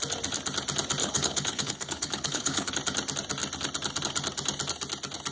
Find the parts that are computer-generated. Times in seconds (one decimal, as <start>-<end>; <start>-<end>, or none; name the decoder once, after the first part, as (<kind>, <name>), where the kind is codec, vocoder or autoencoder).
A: 1.0-2.7 (codec, HILCodec)